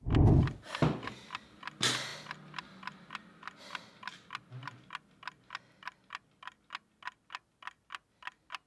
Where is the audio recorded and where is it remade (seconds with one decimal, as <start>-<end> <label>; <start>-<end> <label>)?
0.0-8.7 recorded